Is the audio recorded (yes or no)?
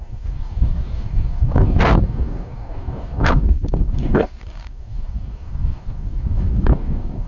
no